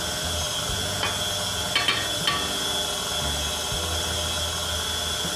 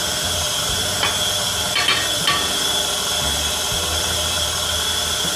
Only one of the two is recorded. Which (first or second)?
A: first